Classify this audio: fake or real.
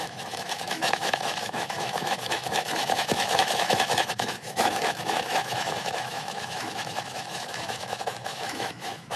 fake